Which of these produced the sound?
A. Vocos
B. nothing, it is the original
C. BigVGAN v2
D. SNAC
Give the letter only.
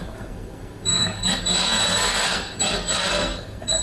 D